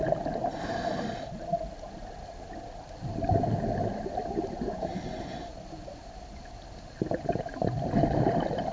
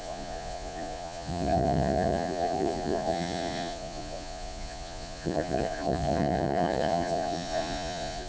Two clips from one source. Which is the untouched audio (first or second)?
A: first